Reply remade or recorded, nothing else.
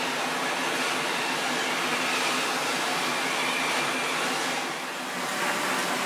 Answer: recorded